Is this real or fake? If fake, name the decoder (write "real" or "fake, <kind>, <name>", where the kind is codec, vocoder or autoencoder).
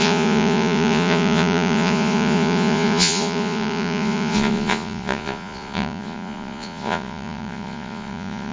fake, vocoder, Vocos